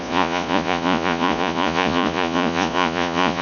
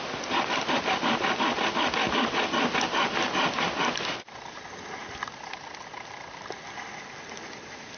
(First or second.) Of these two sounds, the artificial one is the first